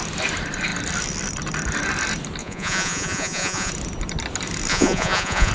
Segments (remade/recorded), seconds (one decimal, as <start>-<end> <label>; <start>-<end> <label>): 0.0-2.4 recorded; 2.4-3.7 remade; 3.7-4.7 recorded; 4.7-5.5 remade